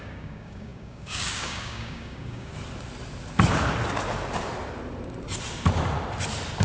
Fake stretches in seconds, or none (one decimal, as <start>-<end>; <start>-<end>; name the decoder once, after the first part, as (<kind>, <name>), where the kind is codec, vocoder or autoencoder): 0.0-2.5 (codec, DAC)